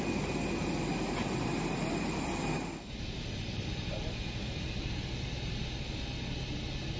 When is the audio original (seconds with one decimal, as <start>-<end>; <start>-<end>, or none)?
0.0-4.4; 5.0-7.0